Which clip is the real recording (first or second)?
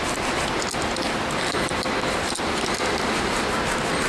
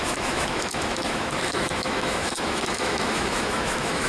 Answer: first